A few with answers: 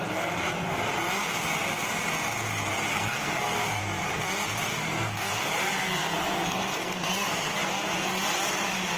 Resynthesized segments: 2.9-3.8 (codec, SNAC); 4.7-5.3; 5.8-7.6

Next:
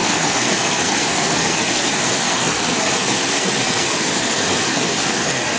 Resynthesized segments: 0.0-5.6 (codec, SNAC)